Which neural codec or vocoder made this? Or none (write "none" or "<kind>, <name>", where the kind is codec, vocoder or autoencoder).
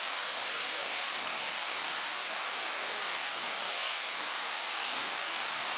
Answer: codec, DAC